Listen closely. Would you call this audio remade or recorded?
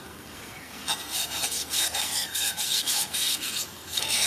remade